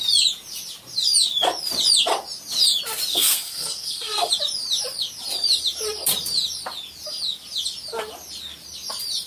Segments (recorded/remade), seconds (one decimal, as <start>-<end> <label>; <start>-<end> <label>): 0.0-3.1 recorded; 3.1-4.3 remade; 4.3-9.3 recorded